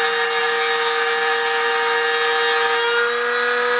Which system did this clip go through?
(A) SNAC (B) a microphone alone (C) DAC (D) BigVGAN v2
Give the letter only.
B